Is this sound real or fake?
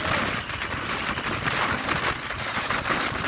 real